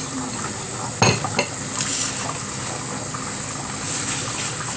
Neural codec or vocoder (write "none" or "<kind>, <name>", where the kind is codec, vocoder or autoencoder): none